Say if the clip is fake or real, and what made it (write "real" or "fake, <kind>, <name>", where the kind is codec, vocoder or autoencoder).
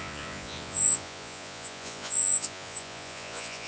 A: fake, vocoder, Vocos